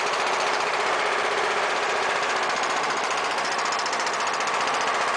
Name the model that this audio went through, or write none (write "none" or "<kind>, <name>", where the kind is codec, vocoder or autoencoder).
vocoder, BigVGAN v2